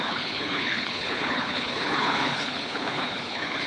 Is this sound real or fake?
fake